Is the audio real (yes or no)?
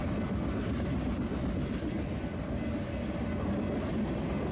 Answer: yes